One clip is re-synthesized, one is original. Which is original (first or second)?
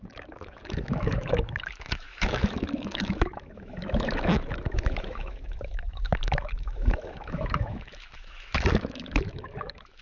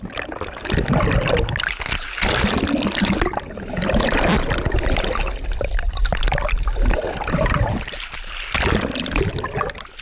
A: second